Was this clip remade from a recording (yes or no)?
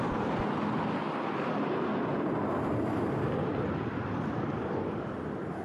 no